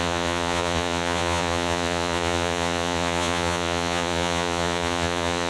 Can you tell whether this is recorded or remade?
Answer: remade